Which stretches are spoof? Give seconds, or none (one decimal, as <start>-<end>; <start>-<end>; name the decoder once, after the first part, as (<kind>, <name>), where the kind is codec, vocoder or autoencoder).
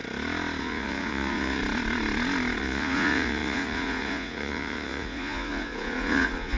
0.6-1.6 (vocoder, Vocos); 2.6-6.6